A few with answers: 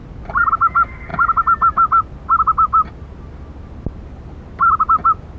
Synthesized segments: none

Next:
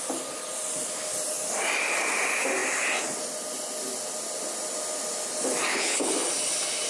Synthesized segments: 5.7-6.3 (codec, HILCodec)

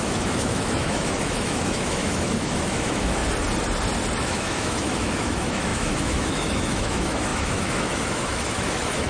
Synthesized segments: 0.0-3.2 (autoencoder, DAC-VAE); 4.2-9.1

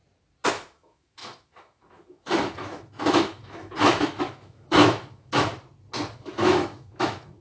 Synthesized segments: 0.5-5.5 (autoencoder, DAC-VAE); 6.1-7.4

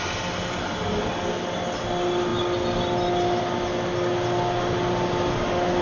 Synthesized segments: none